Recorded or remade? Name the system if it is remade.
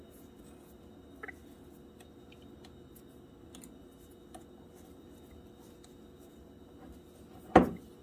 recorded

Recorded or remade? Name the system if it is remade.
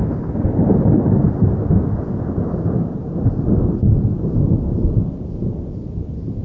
recorded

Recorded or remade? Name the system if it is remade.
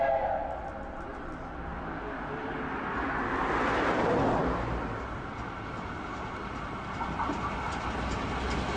recorded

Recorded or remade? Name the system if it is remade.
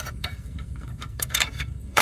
remade, codec, SNAC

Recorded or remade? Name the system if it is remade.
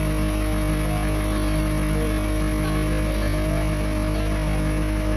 recorded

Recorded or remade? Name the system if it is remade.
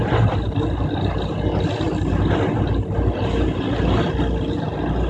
recorded